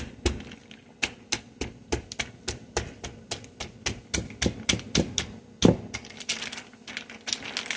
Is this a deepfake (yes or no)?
no